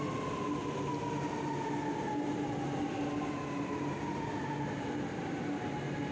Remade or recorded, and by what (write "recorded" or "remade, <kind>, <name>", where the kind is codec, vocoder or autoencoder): recorded